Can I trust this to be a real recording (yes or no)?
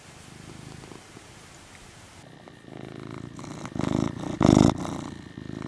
yes